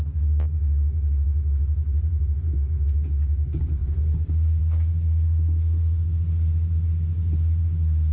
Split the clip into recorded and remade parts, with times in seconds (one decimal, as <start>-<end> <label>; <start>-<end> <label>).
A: 0.0-8.1 recorded